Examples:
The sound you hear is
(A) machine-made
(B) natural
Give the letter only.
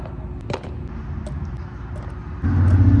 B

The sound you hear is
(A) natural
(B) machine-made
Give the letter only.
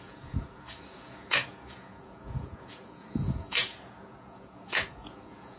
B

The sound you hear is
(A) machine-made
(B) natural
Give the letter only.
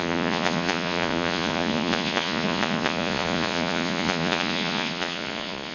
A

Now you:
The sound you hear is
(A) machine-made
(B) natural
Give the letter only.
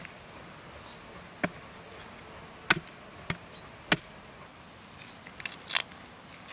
B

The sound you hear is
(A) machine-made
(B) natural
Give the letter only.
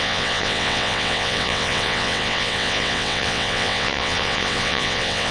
A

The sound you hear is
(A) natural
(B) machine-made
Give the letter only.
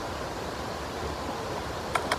A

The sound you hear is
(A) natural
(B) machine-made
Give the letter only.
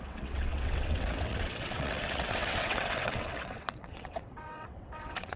B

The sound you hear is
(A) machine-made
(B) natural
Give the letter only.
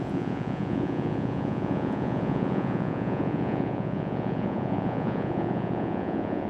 A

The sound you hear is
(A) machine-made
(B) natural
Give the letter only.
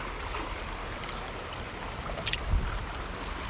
B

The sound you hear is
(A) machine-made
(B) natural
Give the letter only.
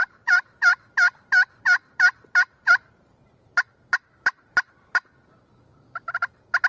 A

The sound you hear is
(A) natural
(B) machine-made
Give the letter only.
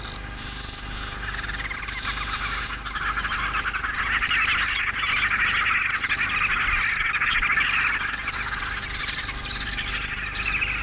A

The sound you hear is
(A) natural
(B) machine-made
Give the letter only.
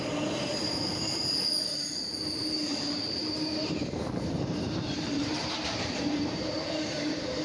B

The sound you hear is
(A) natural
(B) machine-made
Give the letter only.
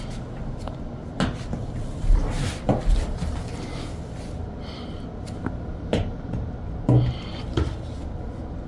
A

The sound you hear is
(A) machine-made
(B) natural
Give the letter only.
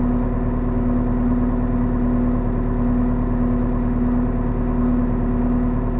B